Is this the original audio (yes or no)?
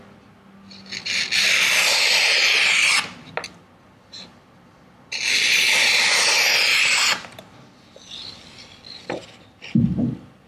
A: yes